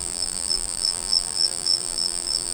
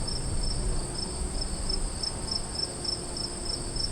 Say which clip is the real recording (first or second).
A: second